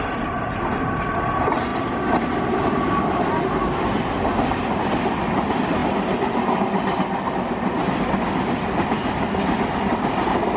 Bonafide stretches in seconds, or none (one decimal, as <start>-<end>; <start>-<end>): 0.0-10.6